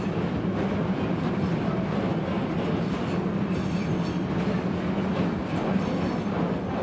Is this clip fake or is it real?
real